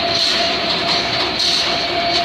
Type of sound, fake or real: fake